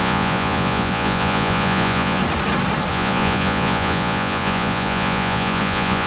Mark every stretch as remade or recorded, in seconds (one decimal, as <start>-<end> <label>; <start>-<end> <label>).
0.0-2.2 remade; 2.2-2.9 recorded; 2.9-6.1 remade